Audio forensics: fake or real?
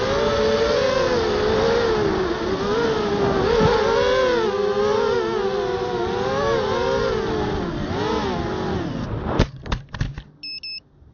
real